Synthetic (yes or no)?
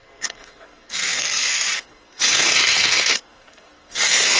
yes